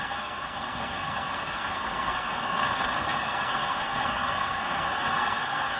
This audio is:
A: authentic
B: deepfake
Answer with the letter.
B